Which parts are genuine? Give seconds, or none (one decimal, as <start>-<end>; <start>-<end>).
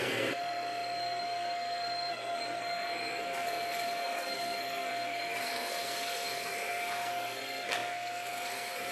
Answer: none